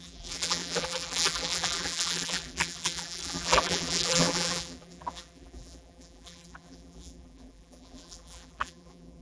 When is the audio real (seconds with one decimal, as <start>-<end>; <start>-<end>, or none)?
none